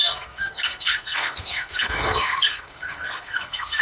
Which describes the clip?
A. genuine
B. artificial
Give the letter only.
B